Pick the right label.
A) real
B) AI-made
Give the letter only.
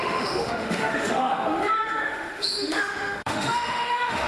B